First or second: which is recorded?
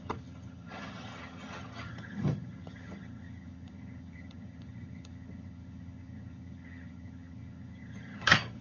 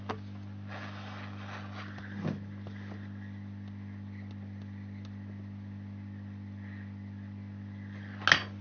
second